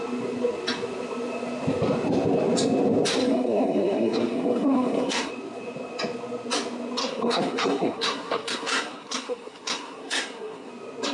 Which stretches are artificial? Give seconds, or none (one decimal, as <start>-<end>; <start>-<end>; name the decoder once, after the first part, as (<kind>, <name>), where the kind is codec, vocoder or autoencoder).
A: 3.2-5.3 (codec, SNAC); 7.0-10.7